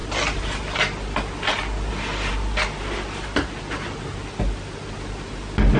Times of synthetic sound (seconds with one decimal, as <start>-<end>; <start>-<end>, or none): none